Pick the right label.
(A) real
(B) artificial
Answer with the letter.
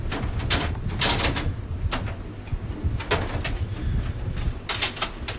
A